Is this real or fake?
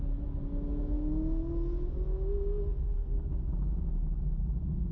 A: real